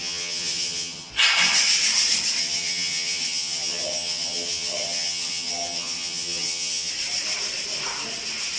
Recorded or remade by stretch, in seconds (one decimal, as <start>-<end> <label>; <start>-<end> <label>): 0.0-1.1 remade; 1.1-2.4 recorded; 2.4-6.9 remade; 6.9-8.6 recorded